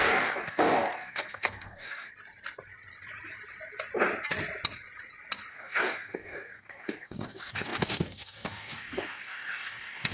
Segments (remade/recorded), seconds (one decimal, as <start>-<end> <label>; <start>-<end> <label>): 0.0-2.1 remade; 2.1-5.5 recorded; 5.5-10.1 remade